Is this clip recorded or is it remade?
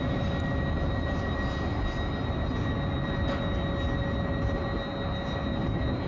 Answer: recorded